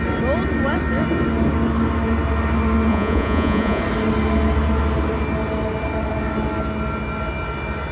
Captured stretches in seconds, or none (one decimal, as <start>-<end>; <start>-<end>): 0.0-2.9; 3.8-7.9